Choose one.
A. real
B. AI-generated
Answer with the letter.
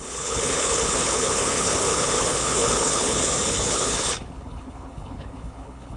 B